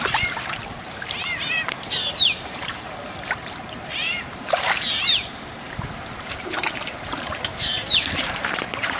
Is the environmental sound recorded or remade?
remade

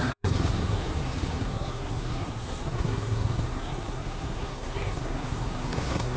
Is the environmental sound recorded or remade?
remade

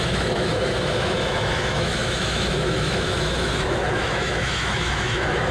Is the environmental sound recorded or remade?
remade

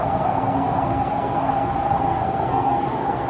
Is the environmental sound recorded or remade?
remade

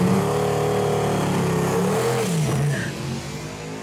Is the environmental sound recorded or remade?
recorded